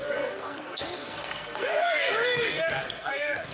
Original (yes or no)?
no